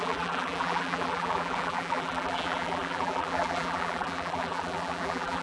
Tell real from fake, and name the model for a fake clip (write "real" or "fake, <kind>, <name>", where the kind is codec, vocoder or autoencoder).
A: fake, vocoder, BigVGAN v2